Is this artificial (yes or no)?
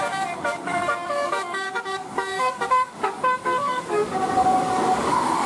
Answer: yes